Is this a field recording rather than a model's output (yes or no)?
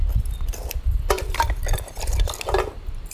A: yes